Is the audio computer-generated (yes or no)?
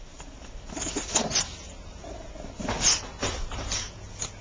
no